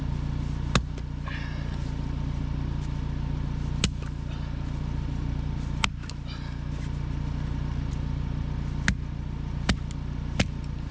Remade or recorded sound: recorded